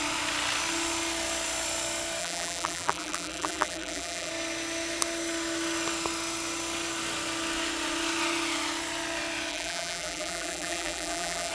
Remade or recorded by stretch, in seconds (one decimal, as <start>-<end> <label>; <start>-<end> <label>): 0.0-2.2 recorded; 2.2-4.3 remade; 4.3-9.5 recorded; 9.5-11.5 remade